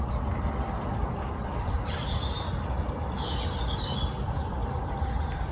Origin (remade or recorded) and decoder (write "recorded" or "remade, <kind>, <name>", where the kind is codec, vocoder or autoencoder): recorded